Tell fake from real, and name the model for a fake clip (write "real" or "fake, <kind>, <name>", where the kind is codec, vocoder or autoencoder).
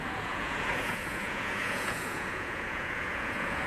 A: fake, vocoder, Vocos